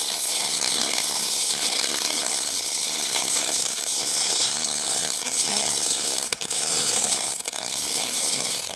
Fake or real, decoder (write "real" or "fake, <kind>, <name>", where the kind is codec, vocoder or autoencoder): fake, codec, SNAC